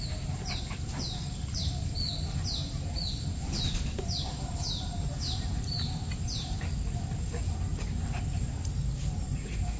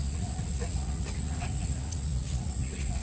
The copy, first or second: second